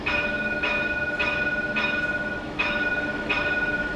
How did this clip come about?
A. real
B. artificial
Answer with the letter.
B